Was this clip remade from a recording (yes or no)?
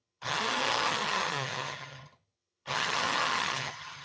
yes